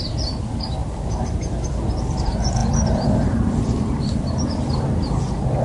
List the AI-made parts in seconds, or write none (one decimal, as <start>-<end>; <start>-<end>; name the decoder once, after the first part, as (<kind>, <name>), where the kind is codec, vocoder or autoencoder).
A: 2.6-4.0 (vocoder, BigVGAN v2)